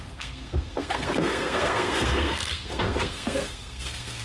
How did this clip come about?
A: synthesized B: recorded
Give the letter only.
A